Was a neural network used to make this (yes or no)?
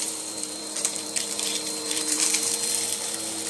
yes